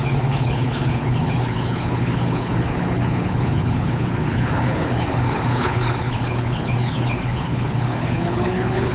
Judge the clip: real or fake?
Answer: fake